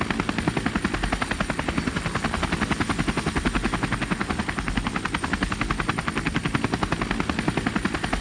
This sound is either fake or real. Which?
real